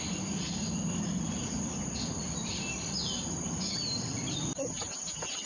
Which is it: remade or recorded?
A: recorded